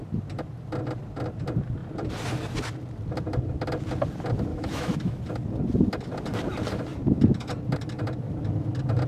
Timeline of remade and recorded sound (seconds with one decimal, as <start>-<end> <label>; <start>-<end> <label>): 0.0-4.5 recorded; 4.5-5.2 remade; 5.2-9.1 recorded